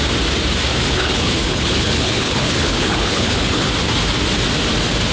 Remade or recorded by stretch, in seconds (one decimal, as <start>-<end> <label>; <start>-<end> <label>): 0.0-0.7 recorded; 0.7-3.7 remade; 3.7-5.1 recorded